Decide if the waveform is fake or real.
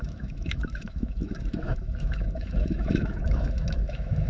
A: fake